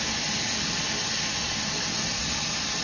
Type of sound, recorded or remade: recorded